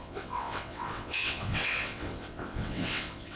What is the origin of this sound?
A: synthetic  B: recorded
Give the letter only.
A